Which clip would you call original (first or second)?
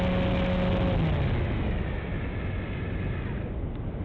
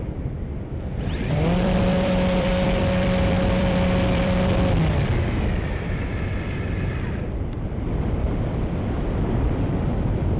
first